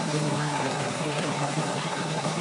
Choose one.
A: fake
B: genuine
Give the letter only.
A